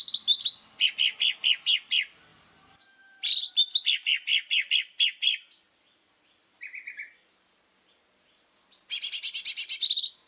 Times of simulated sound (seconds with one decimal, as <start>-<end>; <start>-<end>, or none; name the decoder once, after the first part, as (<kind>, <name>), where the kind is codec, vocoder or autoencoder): 2.3-3.5 (vocoder, BigVGAN v2); 4.3-6.9